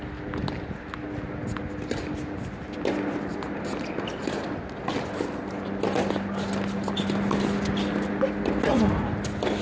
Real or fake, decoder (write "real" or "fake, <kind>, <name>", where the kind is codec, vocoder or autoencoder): real